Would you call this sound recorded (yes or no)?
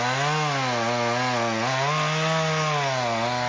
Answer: yes